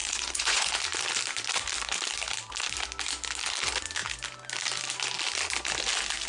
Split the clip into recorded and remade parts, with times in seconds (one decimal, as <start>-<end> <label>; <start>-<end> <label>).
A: 0.0-0.8 remade; 0.8-6.3 recorded